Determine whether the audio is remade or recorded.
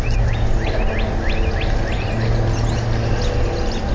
recorded